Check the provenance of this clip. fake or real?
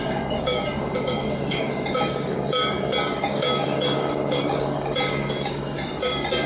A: fake